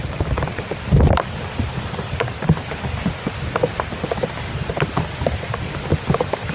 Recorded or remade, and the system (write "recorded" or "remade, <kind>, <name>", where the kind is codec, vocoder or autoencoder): recorded